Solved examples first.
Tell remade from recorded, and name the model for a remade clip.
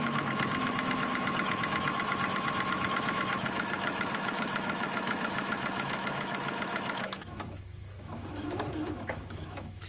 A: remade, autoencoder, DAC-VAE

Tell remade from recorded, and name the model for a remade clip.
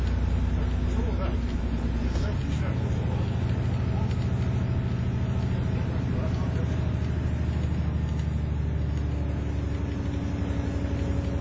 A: recorded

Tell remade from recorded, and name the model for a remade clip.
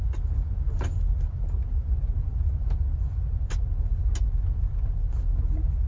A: recorded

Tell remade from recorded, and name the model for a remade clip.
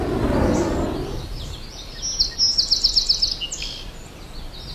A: recorded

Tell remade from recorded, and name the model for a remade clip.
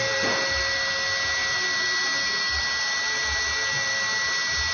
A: recorded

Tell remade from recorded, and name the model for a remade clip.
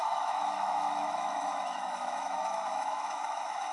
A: remade, autoencoder, DAC-VAE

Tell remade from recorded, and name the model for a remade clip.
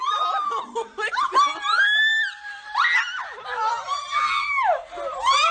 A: recorded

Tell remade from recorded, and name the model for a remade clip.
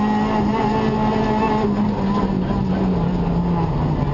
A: recorded